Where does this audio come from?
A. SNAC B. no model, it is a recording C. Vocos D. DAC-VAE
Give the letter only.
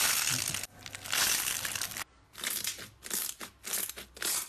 B